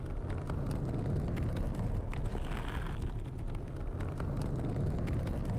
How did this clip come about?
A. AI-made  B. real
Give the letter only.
B